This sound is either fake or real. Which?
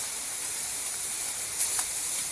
fake